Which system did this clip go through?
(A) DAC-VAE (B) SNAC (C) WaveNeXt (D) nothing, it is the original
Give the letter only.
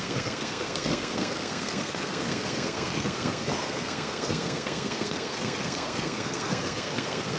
B